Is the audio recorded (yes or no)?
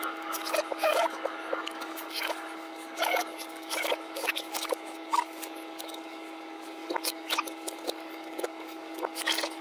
no